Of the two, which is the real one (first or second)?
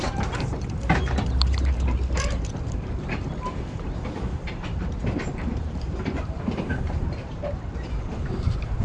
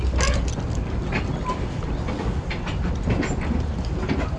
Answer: second